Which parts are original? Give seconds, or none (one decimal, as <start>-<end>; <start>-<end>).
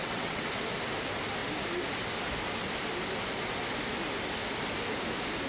0.5-5.5